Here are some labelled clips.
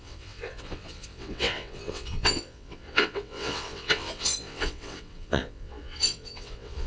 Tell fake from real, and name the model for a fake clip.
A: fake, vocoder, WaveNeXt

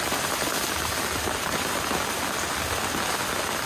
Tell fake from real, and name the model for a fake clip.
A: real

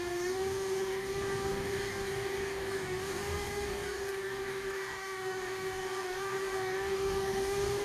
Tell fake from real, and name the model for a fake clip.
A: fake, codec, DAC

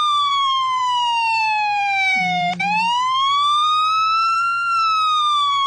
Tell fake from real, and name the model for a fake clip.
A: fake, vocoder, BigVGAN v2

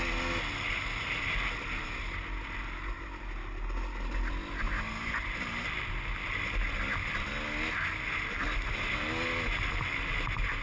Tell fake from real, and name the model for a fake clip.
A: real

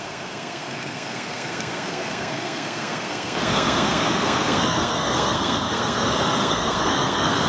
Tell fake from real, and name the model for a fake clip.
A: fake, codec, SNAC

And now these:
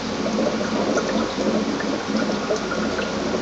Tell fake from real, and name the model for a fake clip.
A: real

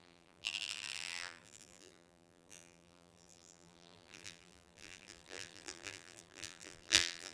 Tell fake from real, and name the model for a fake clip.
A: fake, vocoder, BigVGAN v2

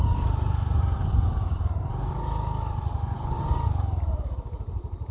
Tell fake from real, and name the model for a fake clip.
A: fake, vocoder, BigVGAN v2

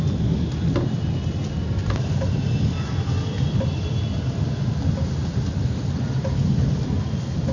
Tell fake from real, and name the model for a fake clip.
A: real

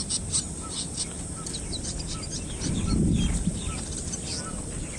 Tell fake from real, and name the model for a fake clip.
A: real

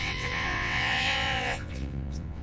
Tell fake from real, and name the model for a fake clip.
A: fake, vocoder, WaveNeXt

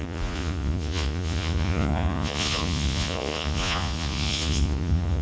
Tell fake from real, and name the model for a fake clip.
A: fake, vocoder, Vocos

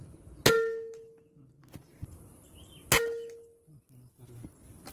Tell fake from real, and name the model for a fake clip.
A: real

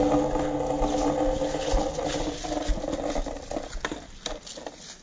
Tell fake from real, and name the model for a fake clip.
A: real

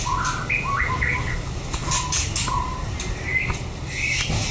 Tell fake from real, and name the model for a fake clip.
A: real